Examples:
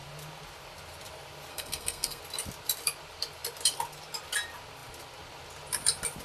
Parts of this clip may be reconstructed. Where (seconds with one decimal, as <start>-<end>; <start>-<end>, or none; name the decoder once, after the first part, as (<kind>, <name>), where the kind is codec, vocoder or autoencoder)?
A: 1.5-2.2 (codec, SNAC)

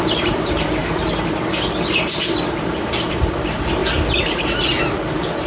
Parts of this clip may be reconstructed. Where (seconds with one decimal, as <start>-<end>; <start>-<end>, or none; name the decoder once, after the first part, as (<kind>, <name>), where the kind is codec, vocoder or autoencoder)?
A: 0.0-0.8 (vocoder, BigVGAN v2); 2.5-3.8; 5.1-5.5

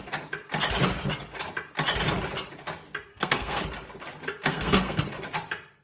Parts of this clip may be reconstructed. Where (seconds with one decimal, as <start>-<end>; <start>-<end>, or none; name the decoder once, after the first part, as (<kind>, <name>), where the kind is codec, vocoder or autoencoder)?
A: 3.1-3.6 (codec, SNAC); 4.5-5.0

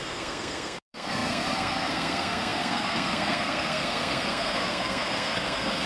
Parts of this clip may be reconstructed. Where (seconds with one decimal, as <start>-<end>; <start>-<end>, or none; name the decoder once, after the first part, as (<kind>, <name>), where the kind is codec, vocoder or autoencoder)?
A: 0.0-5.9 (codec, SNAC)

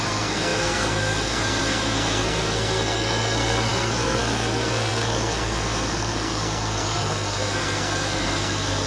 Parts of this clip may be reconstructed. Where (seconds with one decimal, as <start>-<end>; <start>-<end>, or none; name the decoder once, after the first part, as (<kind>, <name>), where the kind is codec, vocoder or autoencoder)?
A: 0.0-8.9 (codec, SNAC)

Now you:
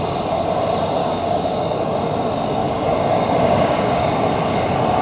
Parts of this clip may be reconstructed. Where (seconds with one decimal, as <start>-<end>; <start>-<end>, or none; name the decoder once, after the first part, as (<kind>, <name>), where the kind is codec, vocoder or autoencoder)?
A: 1.0-2.0 (codec, DAC); 2.6-4.1

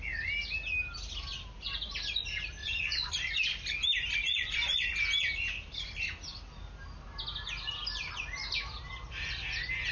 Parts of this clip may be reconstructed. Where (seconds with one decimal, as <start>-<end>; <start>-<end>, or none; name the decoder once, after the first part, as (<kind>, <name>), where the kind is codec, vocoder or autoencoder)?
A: 2.6-3.1 (vocoder, Vocos); 4.2-4.9

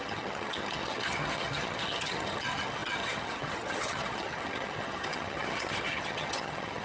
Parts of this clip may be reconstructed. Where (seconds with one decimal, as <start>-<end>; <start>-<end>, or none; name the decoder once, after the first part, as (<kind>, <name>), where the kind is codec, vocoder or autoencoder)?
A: 0.0-6.8 (vocoder, HiFi-GAN)